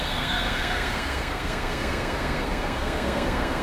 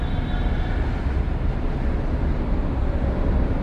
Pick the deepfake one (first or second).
first